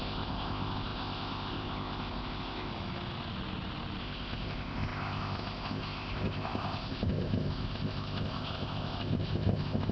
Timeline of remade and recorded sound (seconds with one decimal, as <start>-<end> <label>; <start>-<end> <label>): 0.0-2.7 remade; 2.7-4.0 recorded; 4.0-9.9 remade